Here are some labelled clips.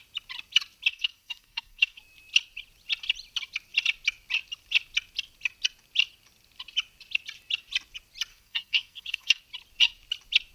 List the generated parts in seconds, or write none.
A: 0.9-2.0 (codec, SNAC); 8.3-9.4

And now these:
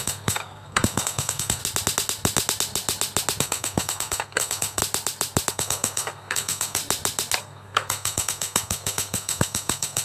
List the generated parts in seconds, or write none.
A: 0.0-1.6 (codec, SNAC); 3.4-4.8; 5.5-6.8; 7.4-10.0

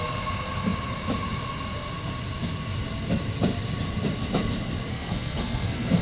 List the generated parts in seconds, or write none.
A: 4.9-6.0 (codec, SNAC)